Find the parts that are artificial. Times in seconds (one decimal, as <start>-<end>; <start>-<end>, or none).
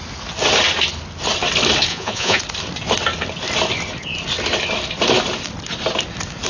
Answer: 1.9-2.4